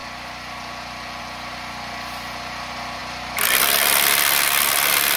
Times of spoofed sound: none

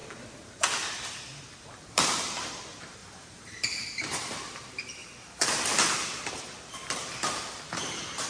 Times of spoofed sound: 1.9-5.0; 7.1-8.3

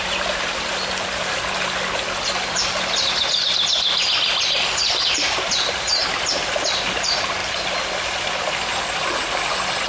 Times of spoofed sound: 7.4-8.8

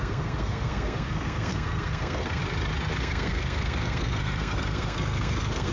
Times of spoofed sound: 0.0-2.4; 3.0-5.7

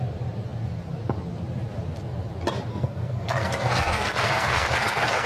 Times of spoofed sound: 2.7-5.3

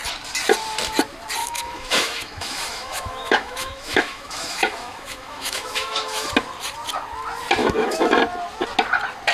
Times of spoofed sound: 1.4-6.3; 7.6-8.2

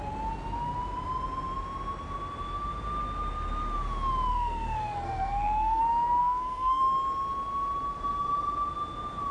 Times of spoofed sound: 4.3-5.8; 6.2-6.8